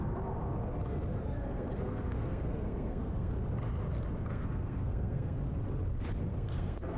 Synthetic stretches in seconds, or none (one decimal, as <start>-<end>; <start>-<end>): 1.2-3.3; 4.2-5.4; 6.3-7.0